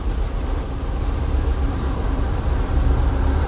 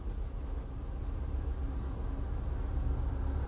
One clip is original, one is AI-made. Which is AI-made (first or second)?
first